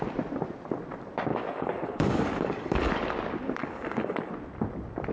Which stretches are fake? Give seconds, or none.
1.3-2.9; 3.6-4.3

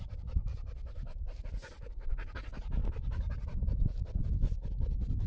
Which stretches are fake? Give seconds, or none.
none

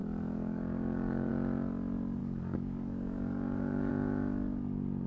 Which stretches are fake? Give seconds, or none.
0.0-1.3; 2.2-3.9

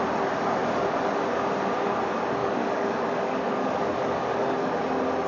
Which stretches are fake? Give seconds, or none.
0.6-1.2; 2.4-4.7